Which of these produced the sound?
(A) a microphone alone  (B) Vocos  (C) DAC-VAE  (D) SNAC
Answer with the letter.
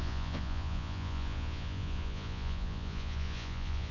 B